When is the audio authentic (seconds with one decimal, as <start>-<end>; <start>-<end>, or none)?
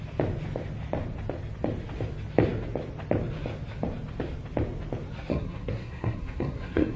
0.0-5.3